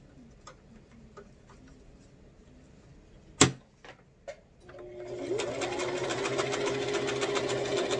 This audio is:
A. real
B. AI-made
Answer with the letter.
A